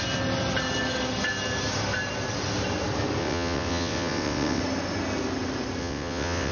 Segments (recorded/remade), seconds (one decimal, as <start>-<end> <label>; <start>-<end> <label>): 0.0-3.2 recorded; 3.2-4.6 remade; 4.6-5.8 recorded; 5.8-6.5 remade